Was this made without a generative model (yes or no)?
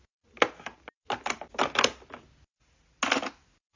yes